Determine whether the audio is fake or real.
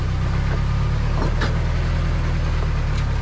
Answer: real